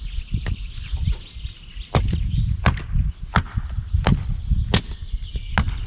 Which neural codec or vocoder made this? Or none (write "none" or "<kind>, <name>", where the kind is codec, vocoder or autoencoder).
none